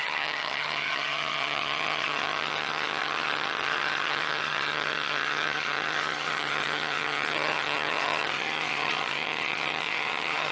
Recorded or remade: remade